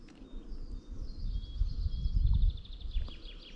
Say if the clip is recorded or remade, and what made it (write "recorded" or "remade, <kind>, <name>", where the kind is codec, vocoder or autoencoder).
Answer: recorded